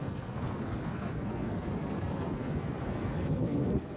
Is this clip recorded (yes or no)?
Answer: no